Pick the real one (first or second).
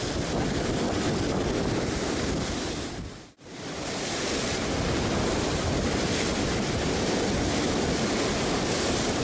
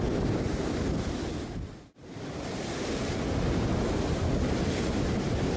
second